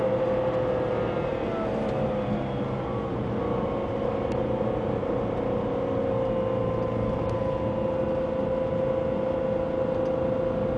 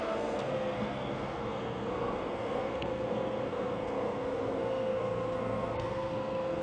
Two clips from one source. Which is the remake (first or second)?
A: second